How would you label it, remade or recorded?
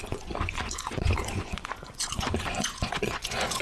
remade